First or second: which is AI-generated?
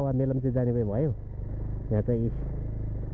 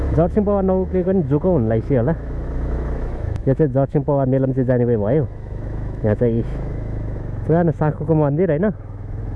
second